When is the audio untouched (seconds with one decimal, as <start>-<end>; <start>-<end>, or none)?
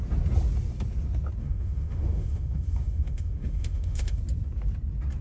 0.0-1.4; 4.2-5.2